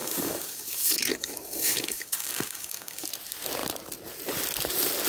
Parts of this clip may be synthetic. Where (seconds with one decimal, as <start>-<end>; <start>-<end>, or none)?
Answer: 0.0-3.1